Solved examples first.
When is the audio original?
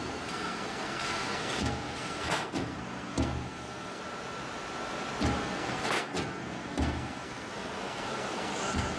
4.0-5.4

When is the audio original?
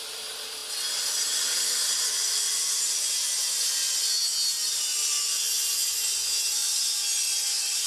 0.0-7.9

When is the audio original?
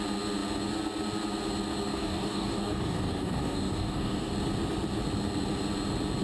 0.0-1.9; 4.3-6.2